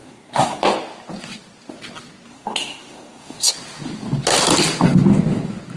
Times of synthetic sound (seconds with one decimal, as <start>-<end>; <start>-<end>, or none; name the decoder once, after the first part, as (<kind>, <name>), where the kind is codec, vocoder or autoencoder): 0.0-0.6 (codec, SNAC); 2.3-3.5